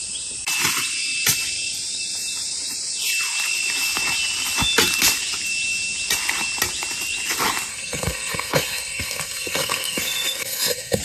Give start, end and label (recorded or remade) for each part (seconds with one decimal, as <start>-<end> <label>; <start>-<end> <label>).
0.0-7.7 recorded; 7.7-11.0 remade

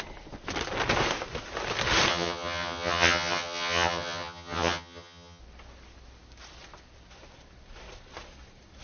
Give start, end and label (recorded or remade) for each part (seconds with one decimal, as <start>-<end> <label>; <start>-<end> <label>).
0.0-2.1 recorded; 2.1-5.4 remade; 5.4-8.8 recorded

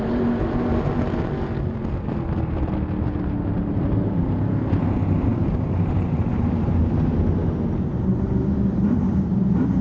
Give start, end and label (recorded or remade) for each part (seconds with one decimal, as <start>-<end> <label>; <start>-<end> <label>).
0.0-0.7 remade; 0.7-4.0 recorded; 4.0-7.4 remade; 7.4-8.8 recorded; 8.8-9.8 remade

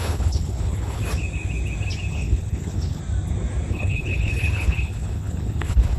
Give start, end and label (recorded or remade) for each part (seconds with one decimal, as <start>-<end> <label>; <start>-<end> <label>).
0.0-1.0 remade; 1.0-2.1 recorded; 2.1-3.0 remade; 3.0-3.7 recorded; 3.7-6.0 remade

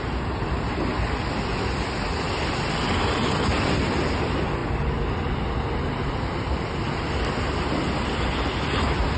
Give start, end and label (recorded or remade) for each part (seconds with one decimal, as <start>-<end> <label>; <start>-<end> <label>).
0.0-9.2 recorded

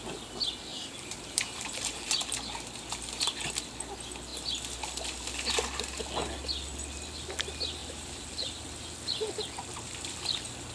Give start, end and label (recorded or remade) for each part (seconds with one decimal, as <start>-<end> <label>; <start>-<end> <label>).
0.0-0.7 recorded; 0.7-2.2 remade; 2.2-7.8 recorded; 7.8-8.6 remade; 8.6-10.7 recorded

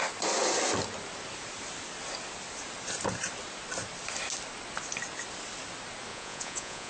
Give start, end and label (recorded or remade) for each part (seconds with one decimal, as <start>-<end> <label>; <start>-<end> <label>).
0.0-6.1 recorded; 6.1-6.9 remade

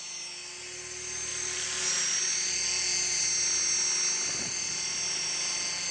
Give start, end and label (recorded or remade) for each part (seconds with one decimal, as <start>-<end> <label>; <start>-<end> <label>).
0.0-5.9 recorded